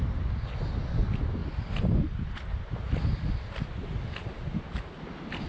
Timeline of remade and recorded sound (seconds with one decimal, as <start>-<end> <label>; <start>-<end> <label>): 0.0-5.5 recorded